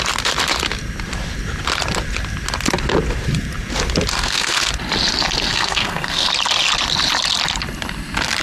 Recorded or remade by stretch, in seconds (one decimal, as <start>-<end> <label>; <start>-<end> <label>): 0.0-4.1 recorded; 4.1-4.7 remade; 4.7-5.5 recorded; 5.5-6.3 remade; 6.3-8.4 recorded